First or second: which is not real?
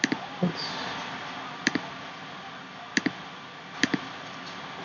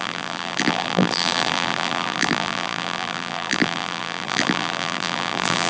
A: second